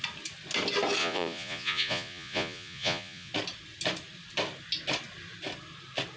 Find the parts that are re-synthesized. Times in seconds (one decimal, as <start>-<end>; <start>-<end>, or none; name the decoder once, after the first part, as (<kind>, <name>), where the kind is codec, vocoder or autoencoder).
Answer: 1.0-3.3 (vocoder, Vocos)